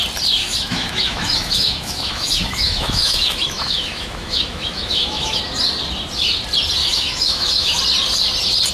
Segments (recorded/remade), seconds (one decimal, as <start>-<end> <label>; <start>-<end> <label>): 0.0-0.4 recorded; 0.4-5.4 remade; 5.4-6.8 recorded; 6.8-7.8 remade; 7.8-8.7 recorded